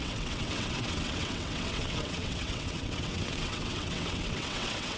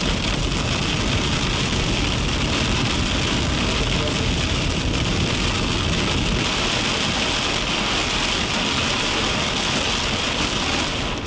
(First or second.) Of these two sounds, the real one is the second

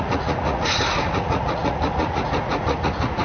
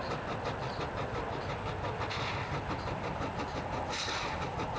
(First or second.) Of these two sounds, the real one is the second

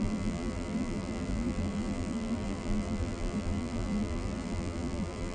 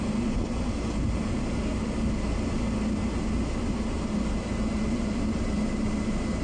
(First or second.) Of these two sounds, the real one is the second